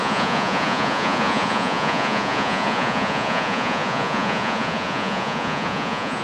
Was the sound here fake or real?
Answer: fake